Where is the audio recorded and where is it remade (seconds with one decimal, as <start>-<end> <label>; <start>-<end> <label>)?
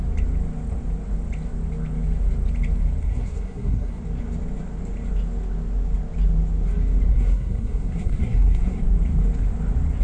0.0-3.0 recorded; 3.0-4.0 remade; 4.0-7.1 recorded; 7.1-8.8 remade; 8.8-10.0 recorded